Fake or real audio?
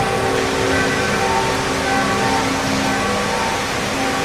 real